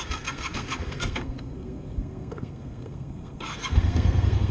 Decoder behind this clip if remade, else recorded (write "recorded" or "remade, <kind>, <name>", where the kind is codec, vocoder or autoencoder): remade, codec, SNAC